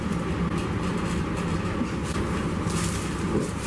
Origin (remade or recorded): remade